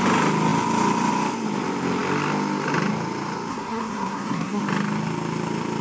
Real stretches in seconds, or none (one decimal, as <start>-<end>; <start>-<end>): 0.0-3.5; 4.6-5.8